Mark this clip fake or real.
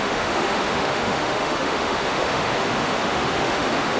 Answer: fake